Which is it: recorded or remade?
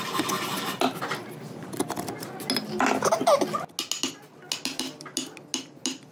recorded